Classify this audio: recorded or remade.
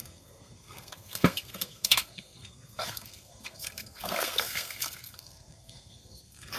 remade